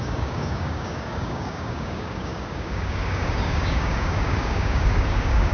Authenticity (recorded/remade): remade